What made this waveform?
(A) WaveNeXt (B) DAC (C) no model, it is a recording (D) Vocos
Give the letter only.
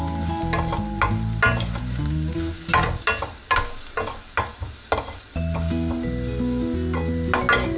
C